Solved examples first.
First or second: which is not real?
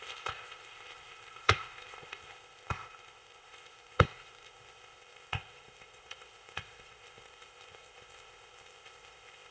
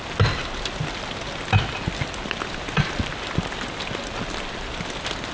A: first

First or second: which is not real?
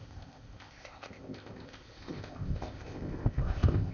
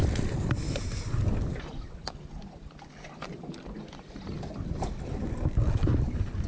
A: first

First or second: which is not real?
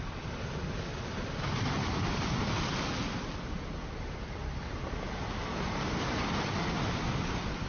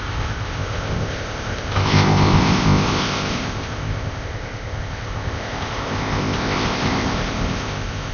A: second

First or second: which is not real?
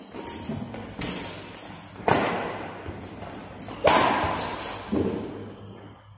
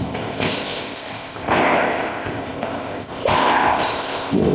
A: second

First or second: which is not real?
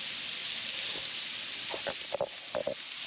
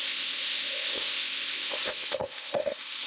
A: second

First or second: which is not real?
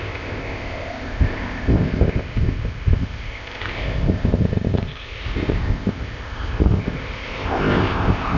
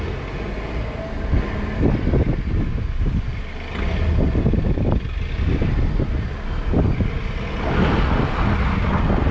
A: first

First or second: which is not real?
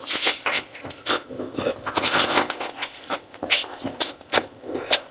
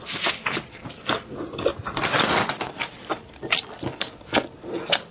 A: first